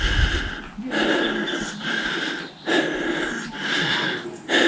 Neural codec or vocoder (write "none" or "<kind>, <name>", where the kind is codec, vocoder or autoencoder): none